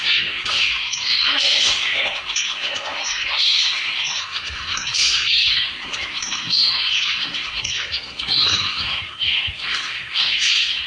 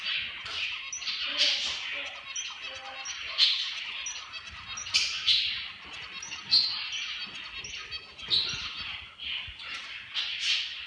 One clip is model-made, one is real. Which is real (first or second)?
second